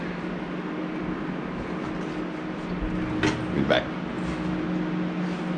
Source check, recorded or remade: recorded